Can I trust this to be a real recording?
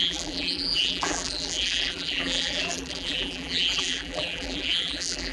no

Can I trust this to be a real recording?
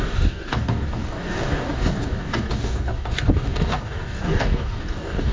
no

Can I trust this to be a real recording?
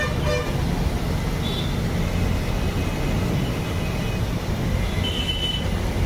yes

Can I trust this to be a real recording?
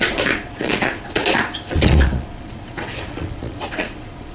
no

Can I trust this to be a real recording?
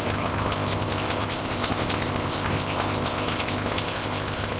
no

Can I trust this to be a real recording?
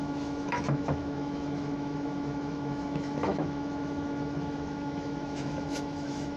no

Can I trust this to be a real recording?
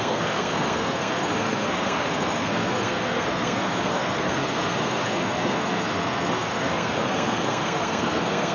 no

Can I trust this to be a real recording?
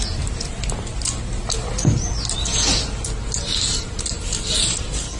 yes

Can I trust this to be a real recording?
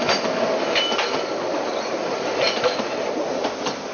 yes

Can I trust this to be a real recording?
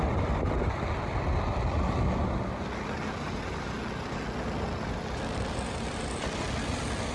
yes